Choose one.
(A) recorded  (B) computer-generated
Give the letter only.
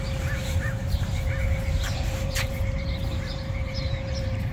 B